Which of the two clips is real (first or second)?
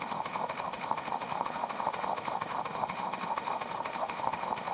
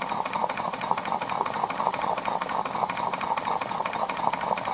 second